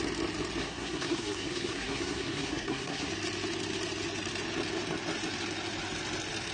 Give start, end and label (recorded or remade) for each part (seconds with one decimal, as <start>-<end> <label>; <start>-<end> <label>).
0.0-0.6 recorded; 0.6-3.1 remade; 3.1-6.5 recorded